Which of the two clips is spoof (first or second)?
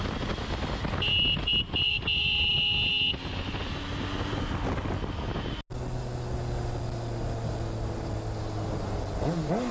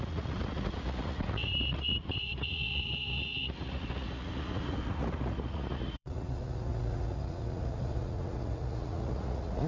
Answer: second